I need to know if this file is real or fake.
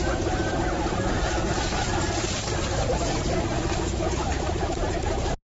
real